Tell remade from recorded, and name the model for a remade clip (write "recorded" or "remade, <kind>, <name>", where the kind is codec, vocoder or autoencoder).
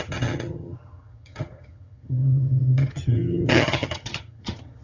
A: remade, vocoder, HiFi-GAN